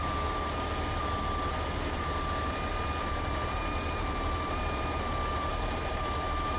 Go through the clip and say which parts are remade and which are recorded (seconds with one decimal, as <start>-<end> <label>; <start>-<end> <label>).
0.0-2.7 recorded; 2.7-6.6 remade